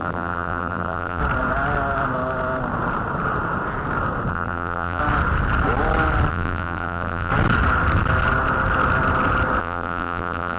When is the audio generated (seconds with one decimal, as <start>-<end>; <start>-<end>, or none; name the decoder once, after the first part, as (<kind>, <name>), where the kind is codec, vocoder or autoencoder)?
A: 0.0-1.2 (vocoder, BigVGAN v2); 4.3-5.0; 6.3-7.3; 9.6-10.6